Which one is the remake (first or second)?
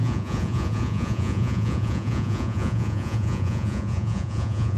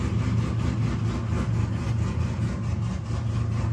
first